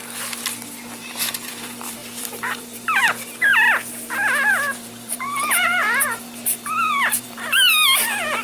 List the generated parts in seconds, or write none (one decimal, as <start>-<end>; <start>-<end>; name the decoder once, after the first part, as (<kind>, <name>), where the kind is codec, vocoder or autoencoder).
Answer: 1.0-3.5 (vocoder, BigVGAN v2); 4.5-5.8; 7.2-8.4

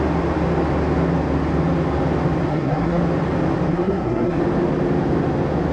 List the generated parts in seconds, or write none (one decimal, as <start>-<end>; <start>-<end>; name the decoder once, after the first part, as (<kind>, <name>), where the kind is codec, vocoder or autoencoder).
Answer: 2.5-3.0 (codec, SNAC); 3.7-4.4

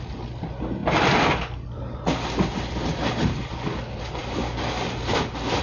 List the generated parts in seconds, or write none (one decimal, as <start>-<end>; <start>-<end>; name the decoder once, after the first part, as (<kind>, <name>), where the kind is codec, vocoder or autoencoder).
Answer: none